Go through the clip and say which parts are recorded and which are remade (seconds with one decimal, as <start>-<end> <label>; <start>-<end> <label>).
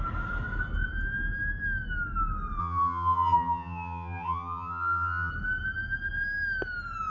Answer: 0.0-2.6 recorded; 2.6-5.3 remade; 5.3-7.1 recorded